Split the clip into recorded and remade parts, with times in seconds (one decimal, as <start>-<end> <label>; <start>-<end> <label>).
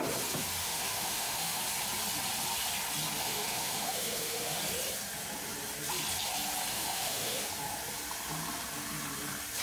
0.0-0.6 recorded; 0.6-1.6 remade; 1.6-3.2 recorded; 3.2-4.6 remade; 4.6-6.7 recorded; 6.7-7.5 remade; 7.5-9.6 recorded